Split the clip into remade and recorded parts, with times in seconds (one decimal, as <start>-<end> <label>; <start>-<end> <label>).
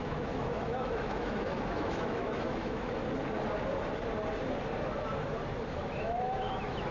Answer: 0.0-3.0 remade; 3.0-5.7 recorded; 5.7-6.9 remade